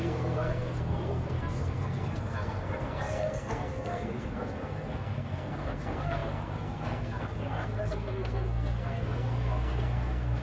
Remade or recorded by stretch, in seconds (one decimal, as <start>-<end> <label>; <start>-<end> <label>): 0.0-10.4 remade